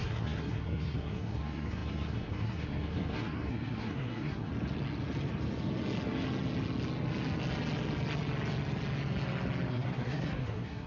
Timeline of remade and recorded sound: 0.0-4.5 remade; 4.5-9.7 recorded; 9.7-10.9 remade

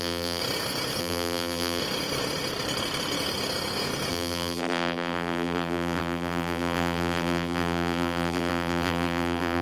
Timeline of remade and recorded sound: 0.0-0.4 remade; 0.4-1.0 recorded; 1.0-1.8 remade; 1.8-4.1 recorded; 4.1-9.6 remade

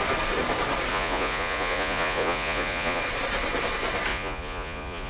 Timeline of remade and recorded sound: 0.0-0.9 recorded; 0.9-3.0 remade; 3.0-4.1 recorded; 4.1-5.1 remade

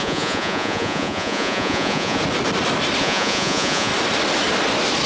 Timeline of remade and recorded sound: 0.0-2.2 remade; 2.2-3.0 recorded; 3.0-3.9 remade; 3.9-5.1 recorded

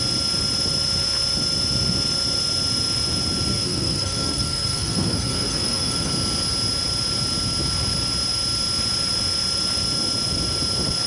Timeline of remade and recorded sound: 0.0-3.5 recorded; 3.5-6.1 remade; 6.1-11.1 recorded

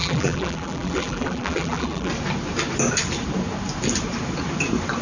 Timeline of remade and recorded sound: 0.0-2.1 remade; 2.1-5.0 recorded